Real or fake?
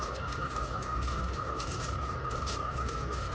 fake